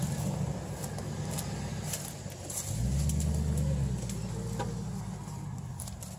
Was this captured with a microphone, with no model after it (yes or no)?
yes